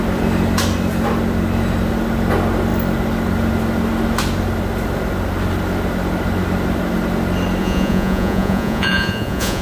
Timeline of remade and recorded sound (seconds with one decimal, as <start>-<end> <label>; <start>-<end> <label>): 0.0-7.6 recorded; 7.6-9.6 remade